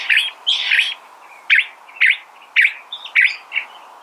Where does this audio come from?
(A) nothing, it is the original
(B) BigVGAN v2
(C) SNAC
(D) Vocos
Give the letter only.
A